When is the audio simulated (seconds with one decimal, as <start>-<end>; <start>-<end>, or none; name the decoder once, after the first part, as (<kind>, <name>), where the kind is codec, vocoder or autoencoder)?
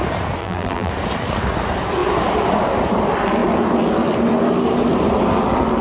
0.4-0.9 (vocoder, BigVGAN v2)